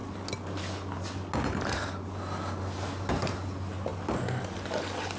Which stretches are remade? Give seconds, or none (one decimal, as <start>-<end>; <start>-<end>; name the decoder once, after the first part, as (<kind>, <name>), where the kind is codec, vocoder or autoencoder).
none